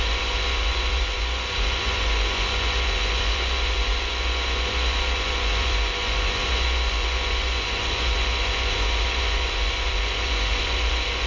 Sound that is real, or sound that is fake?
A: fake